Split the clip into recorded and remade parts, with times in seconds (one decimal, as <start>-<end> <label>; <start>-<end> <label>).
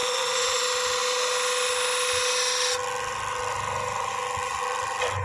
0.0-0.6 remade; 0.6-5.2 recorded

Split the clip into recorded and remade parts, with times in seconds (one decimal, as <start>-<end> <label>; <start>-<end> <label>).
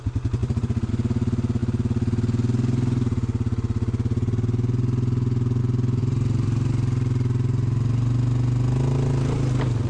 0.0-0.4 recorded; 0.4-0.9 remade; 0.9-6.0 recorded; 6.0-6.7 remade; 6.7-9.9 recorded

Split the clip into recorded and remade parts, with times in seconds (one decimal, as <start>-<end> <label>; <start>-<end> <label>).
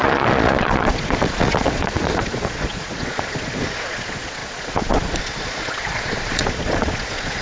0.0-7.4 remade